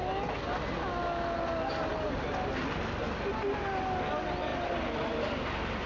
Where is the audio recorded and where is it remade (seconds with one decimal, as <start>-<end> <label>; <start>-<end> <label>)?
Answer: 0.0-4.5 recorded; 4.5-5.2 remade; 5.2-5.9 recorded